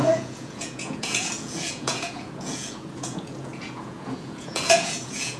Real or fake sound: fake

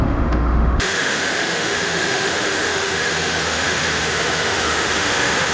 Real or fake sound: fake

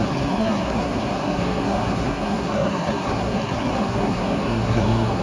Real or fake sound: fake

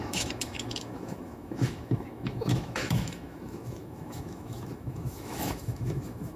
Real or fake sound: fake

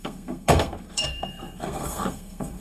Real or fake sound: fake